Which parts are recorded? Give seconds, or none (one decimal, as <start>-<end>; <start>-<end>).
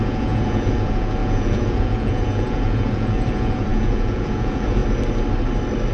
4.8-5.9